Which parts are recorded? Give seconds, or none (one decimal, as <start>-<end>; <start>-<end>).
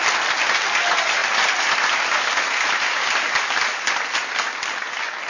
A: 0.0-5.3